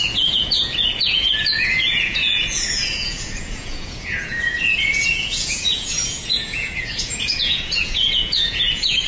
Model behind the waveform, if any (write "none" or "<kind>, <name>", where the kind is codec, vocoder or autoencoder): vocoder, Vocos